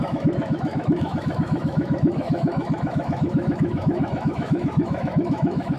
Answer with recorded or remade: remade